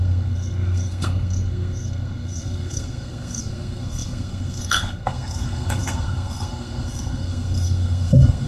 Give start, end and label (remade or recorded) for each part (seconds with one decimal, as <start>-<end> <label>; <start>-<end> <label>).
0.0-8.5 remade